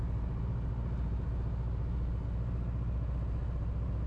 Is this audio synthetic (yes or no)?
no